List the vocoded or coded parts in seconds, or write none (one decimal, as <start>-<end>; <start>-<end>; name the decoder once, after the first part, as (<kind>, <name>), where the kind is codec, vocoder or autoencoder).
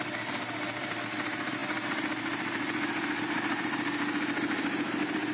none